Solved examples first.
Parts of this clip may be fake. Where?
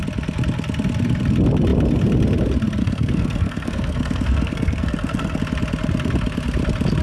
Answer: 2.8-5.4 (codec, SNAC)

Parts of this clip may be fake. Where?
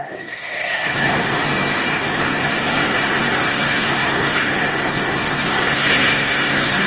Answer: 0.0-1.4 (codec, SNAC); 1.9-6.9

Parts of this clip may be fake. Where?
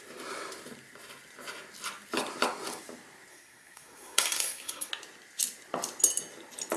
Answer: 3.3-4.9 (codec, SNAC)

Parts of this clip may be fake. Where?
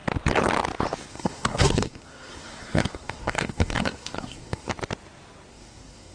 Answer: 1.1-4.7 (codec, SNAC); 5.5-6.1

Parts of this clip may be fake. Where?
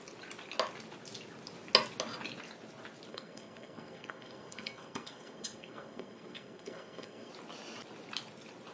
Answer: 3.1-7.3 (codec, SNAC)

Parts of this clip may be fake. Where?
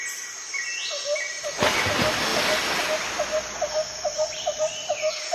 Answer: none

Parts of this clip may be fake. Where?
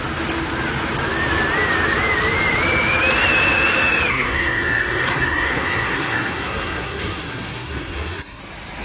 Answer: 4.1-8.4 (codec, SNAC)